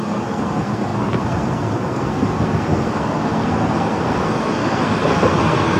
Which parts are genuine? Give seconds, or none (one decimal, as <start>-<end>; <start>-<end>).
none